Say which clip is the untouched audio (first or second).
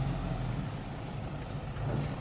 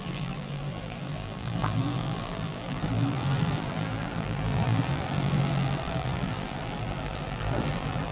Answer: first